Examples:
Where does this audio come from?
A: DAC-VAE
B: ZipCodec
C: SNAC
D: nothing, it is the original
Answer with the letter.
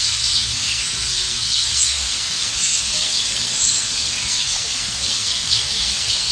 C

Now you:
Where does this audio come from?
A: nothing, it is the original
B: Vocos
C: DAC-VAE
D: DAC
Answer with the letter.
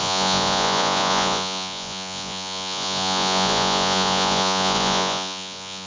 B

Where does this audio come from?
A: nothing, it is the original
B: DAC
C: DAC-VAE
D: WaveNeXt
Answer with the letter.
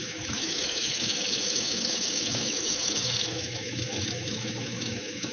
C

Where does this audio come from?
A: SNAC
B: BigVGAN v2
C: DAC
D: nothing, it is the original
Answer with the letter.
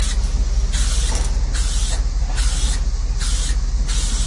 D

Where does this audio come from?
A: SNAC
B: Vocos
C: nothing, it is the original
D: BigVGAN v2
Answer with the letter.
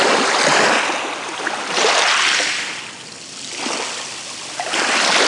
C